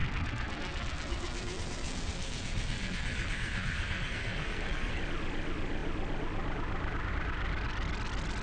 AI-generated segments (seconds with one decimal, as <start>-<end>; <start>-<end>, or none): 0.0-5.0